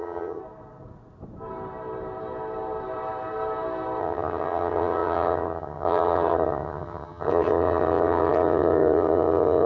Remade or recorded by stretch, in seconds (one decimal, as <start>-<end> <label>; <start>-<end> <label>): 0.0-0.4 remade; 0.4-4.0 recorded; 4.0-9.7 remade